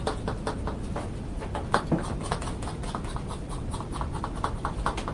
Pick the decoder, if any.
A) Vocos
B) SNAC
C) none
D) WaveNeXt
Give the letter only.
C